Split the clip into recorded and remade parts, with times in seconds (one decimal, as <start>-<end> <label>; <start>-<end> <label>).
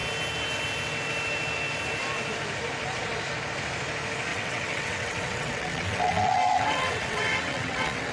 0.0-4.3 recorded; 4.3-8.1 remade